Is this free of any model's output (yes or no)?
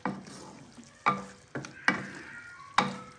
yes